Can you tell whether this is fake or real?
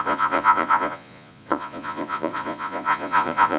fake